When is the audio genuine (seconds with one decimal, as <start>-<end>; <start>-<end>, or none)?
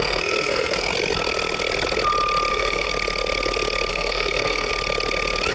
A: 0.9-2.5; 2.9-3.9; 4.7-5.5